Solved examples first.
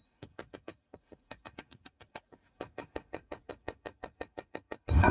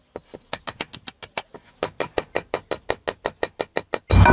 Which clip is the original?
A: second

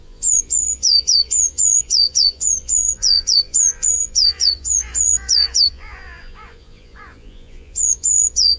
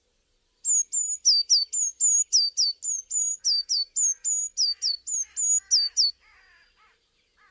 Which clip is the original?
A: second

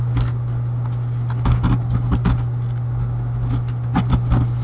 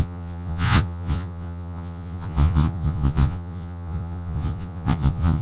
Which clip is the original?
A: first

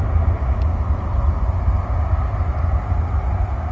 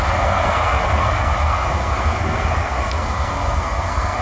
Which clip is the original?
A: first